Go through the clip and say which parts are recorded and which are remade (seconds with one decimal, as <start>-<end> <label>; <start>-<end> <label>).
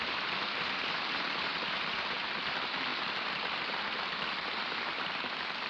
0.0-1.5 remade; 1.5-2.4 recorded; 2.4-2.9 remade; 2.9-4.6 recorded; 4.6-5.7 remade